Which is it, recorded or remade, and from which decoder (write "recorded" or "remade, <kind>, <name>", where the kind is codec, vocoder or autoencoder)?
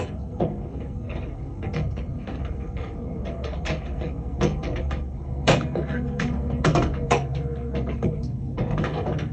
remade, codec, SNAC